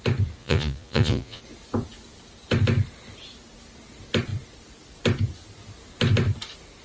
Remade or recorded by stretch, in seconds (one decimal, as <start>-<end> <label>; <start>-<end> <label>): 0.0-0.4 recorded; 0.4-1.4 remade; 1.4-6.8 recorded